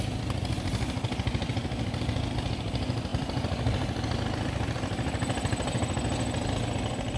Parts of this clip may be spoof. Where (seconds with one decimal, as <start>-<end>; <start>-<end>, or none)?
3.1-7.2